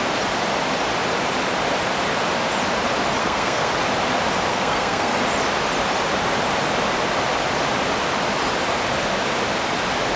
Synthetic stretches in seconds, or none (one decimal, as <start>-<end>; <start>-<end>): 3.2-3.7; 4.5-5.2